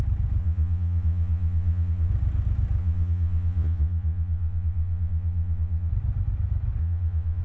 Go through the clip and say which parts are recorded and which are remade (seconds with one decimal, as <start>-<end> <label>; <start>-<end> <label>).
0.0-0.4 recorded; 0.4-2.1 remade; 2.1-2.8 recorded; 2.8-5.9 remade; 5.9-6.8 recorded; 6.8-7.4 remade